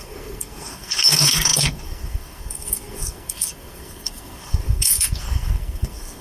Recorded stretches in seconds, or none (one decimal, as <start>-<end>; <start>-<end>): none